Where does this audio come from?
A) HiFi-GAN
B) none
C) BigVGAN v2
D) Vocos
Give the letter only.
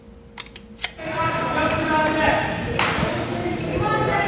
B